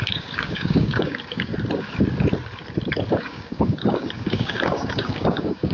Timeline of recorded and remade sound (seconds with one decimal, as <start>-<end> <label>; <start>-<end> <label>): 0.0-1.5 remade; 1.5-3.1 recorded; 3.1-5.7 remade